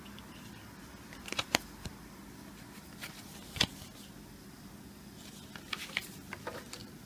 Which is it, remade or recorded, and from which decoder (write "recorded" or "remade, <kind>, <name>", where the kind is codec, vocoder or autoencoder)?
recorded